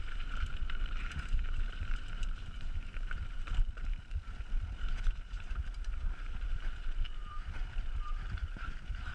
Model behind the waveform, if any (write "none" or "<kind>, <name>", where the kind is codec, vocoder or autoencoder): vocoder, BigVGAN v2